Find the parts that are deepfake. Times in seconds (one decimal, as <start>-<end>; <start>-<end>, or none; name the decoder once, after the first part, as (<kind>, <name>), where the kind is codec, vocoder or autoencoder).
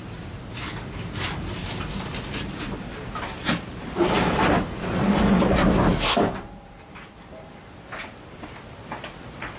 1.6-5.3 (vocoder, BigVGAN v2); 5.8-7.6